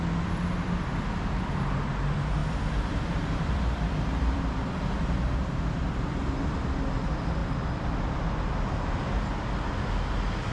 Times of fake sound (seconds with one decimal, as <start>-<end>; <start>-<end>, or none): 2.4-5.8